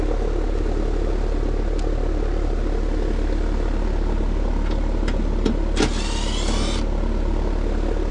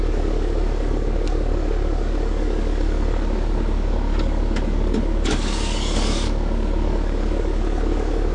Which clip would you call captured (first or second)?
first